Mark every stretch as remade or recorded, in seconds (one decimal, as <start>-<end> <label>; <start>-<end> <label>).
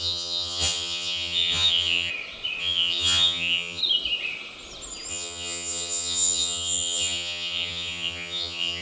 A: 0.0-2.1 remade; 2.1-2.6 recorded; 2.6-3.8 remade; 3.8-5.1 recorded; 5.1-8.8 remade